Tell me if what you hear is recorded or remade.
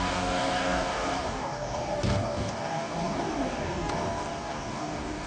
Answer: remade